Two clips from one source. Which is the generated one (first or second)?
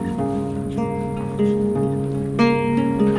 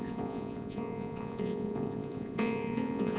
second